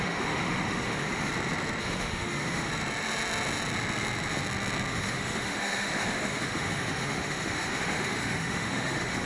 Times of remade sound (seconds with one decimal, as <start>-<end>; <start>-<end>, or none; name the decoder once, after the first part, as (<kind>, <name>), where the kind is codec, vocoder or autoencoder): 0.0-1.3 (autoencoder, DAC-VAE); 1.8-2.7; 4.9-9.3